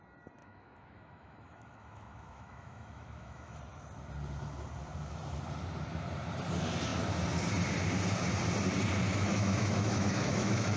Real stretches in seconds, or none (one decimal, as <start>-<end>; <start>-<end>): 0.0-0.4; 3.6-9.1